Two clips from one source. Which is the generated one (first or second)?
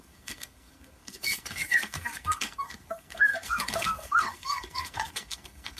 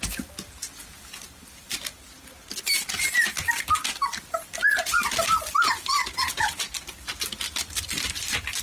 first